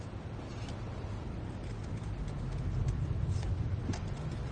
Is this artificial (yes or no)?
no